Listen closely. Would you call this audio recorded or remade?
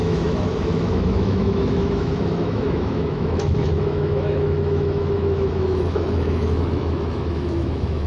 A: remade